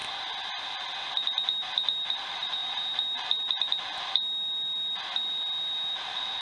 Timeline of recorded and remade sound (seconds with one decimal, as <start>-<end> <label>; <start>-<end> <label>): 0.0-6.4 recorded

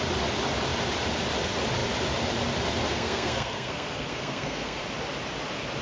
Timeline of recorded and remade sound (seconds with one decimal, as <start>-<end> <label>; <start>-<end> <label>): 0.0-2.9 recorded; 2.9-4.8 remade; 4.8-5.8 recorded

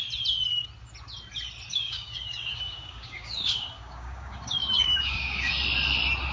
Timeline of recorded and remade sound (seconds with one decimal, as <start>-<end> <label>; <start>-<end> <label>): 0.0-1.7 recorded; 1.7-5.5 remade; 5.5-6.3 recorded

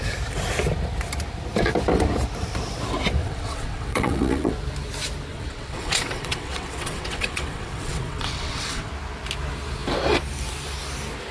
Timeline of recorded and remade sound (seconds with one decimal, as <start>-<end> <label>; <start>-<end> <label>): 0.0-3.2 recorded; 3.2-4.5 remade; 4.5-5.3 recorded; 5.3-8.9 remade; 8.9-11.3 recorded